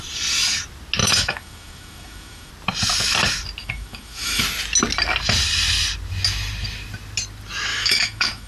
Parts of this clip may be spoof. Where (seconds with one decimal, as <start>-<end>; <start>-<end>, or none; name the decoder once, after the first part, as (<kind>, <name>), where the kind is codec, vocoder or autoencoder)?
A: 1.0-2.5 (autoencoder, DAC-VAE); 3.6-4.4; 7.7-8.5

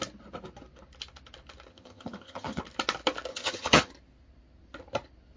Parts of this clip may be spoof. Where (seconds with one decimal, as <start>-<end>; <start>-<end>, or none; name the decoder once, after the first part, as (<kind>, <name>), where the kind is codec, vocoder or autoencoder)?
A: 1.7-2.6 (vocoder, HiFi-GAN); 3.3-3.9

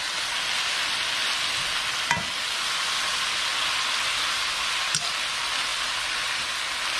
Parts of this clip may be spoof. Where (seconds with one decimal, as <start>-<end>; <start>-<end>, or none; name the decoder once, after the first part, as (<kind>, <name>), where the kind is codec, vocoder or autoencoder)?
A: 5.7-6.5 (vocoder, BigVGAN v2)

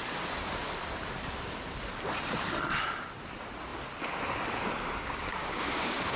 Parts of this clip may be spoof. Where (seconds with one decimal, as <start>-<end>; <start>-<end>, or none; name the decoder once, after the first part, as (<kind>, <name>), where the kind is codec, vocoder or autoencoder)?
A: 5.4-6.2 (codec, DAC)

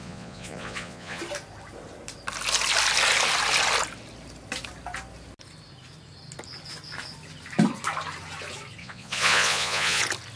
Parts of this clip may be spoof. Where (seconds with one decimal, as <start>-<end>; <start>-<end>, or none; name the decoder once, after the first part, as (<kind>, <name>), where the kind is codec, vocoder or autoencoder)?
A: 0.0-1.2 (vocoder, Vocos); 8.8-10.0

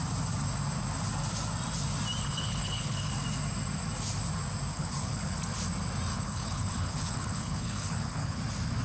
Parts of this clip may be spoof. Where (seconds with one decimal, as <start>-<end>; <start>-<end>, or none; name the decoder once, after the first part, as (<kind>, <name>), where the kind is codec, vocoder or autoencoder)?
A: 2.2-3.1 (codec, HILCodec); 4.7-5.4; 6.1-8.4

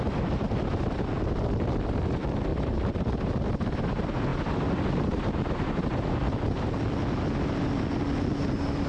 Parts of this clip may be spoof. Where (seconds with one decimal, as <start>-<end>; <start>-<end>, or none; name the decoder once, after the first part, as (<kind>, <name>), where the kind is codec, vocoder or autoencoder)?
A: 2.5-3.2 (vocoder, BigVGAN v2); 4.3-6.8